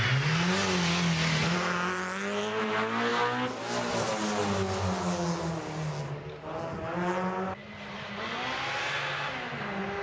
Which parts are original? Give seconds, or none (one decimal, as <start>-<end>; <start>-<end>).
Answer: 0.0-10.0